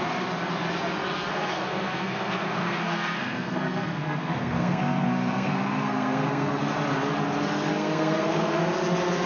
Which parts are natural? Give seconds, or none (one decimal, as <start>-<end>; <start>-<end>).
0.0-1.3; 6.6-7.7; 8.6-9.3